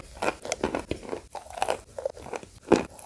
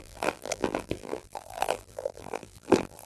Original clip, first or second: first